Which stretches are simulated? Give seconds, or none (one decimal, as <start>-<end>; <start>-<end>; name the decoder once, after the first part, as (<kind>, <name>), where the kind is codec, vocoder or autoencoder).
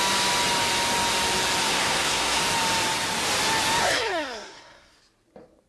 1.6-2.4 (codec, SNAC); 3.8-5.0